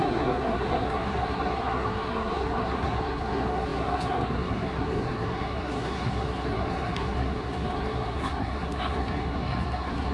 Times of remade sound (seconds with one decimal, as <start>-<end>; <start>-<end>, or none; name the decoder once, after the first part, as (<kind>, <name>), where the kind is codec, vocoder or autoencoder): 0.0-10.1 (codec, SNAC)